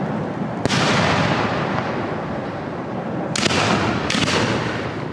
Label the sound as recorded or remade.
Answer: recorded